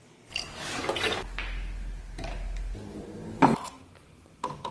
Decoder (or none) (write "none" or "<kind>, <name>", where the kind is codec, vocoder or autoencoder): none